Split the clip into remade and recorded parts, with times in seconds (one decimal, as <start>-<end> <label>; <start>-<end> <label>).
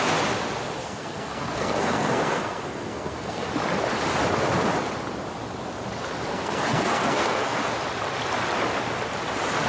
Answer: 0.0-0.8 recorded; 0.8-3.5 remade; 3.5-6.3 recorded; 6.3-7.6 remade; 7.6-9.7 recorded